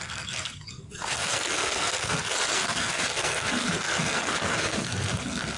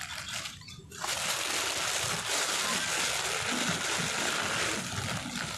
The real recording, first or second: second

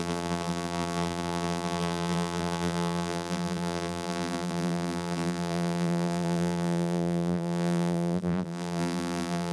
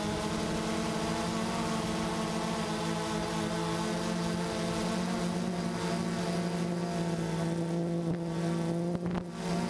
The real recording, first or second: second